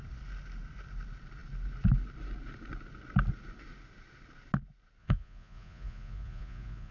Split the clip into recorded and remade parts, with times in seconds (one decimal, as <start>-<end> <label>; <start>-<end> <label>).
0.0-5.0 recorded; 5.0-6.9 remade